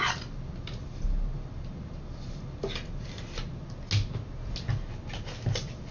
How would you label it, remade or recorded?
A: recorded